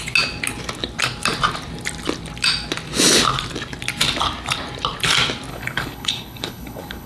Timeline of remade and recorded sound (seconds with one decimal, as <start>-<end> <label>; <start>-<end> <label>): 0.0-5.5 recorded; 5.5-7.1 remade